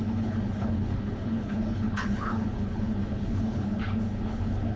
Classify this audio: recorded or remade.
remade